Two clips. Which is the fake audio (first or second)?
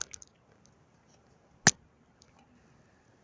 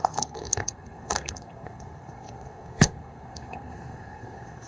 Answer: second